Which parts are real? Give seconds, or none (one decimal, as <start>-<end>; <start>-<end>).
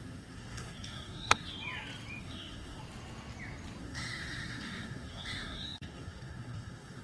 1.5-2.2; 2.8-3.8